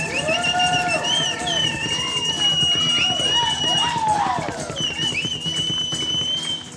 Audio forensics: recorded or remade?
recorded